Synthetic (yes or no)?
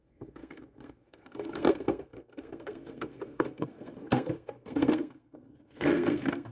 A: yes